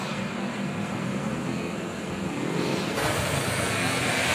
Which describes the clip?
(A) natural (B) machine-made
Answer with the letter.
B